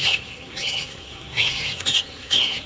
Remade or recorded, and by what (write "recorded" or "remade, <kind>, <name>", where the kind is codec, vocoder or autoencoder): remade, codec, SNAC